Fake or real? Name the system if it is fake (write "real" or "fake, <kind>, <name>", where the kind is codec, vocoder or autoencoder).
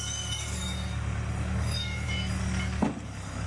fake, codec, DAC